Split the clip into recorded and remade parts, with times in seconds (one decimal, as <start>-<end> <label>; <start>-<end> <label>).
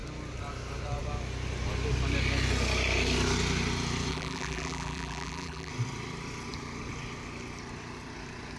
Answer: 0.0-4.1 recorded; 4.1-5.7 remade; 5.7-8.6 recorded